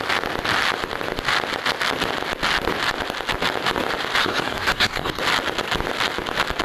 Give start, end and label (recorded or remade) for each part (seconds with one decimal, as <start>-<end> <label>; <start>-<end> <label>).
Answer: 0.0-4.2 recorded; 4.2-5.2 remade; 5.2-6.6 recorded